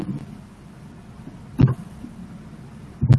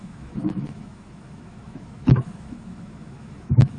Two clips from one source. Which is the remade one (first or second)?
second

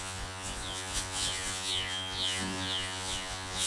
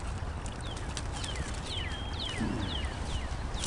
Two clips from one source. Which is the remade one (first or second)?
first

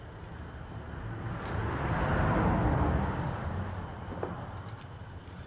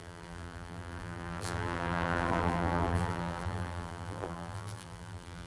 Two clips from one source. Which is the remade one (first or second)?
second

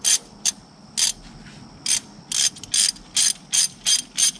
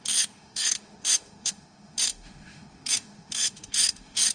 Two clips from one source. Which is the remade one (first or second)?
second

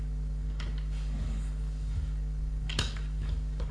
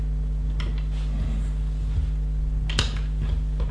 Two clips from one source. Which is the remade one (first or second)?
first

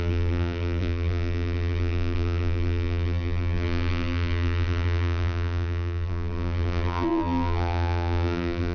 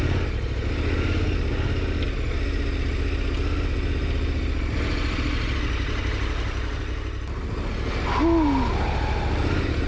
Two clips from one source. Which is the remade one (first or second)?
first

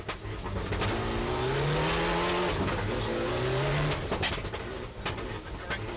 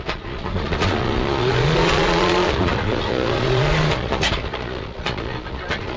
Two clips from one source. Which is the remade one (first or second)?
second